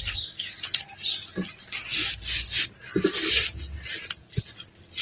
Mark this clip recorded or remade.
recorded